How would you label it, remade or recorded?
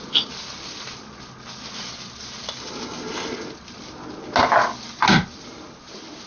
recorded